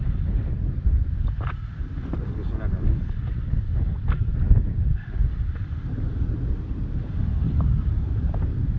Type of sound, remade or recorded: recorded